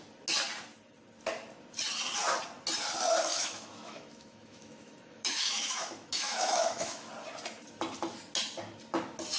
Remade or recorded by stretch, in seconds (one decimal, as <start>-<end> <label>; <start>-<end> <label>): 0.0-3.3 recorded; 3.3-7.1 remade; 7.1-9.4 recorded